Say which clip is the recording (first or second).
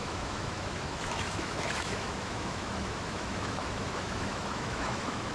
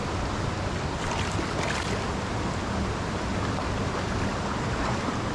second